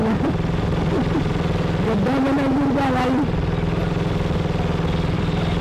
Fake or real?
real